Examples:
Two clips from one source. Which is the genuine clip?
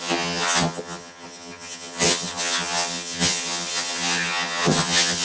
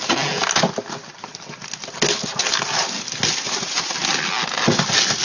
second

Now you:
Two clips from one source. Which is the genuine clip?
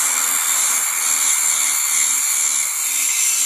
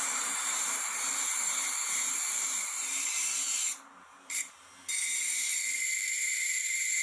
first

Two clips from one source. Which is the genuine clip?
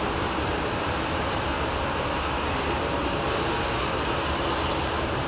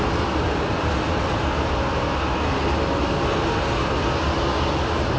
second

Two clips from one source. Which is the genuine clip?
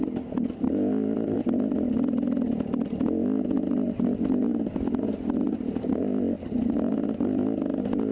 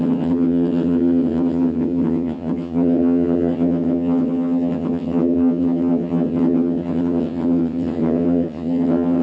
first